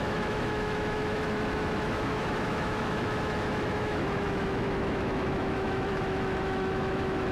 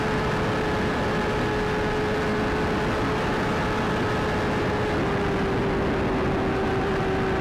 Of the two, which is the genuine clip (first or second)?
second